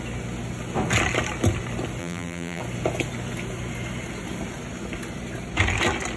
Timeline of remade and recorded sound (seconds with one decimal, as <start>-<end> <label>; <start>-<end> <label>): 0.0-2.0 recorded; 2.0-2.6 remade; 2.6-6.2 recorded